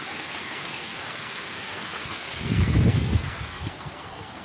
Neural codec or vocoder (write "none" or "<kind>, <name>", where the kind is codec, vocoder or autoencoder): codec, SNAC